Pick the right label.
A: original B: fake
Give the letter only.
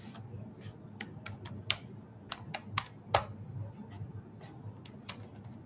A